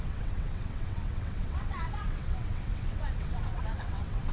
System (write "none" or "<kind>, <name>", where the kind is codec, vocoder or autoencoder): vocoder, WaveNeXt